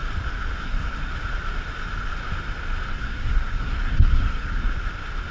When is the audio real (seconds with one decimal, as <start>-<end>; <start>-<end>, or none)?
0.0-0.6; 1.1-2.9; 4.6-5.3